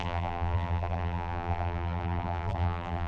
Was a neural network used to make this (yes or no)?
yes